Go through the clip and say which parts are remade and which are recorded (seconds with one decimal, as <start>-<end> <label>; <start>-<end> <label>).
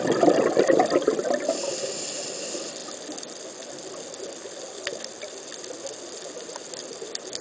0.0-7.4 recorded